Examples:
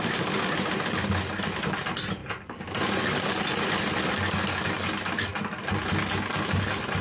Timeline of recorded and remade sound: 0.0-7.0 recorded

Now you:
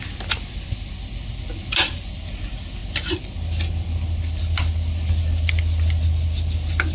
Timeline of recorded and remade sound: 0.0-6.9 recorded

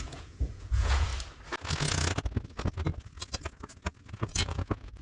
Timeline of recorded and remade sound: 0.0-1.1 remade; 1.1-4.1 recorded; 4.1-5.0 remade

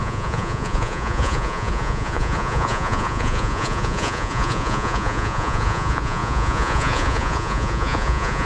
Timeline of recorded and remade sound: 0.0-8.5 remade

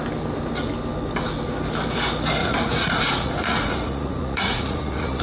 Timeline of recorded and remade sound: 0.0-2.4 recorded; 2.4-5.2 remade

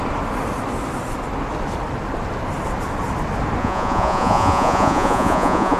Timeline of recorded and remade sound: 0.0-3.6 recorded; 3.6-5.8 remade

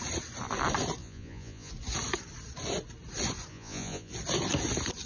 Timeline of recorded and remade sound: 0.0-1.0 recorded; 1.0-1.7 remade; 1.7-3.5 recorded; 3.5-4.1 remade; 4.1-5.1 recorded

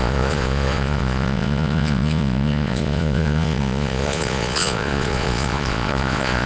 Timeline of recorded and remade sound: 0.0-6.5 remade